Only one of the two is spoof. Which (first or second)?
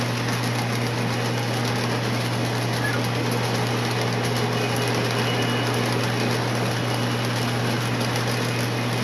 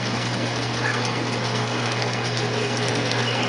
second